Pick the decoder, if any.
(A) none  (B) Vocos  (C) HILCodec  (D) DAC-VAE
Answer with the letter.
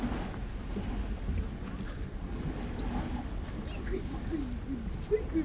A